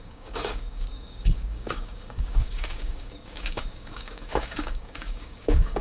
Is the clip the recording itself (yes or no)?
no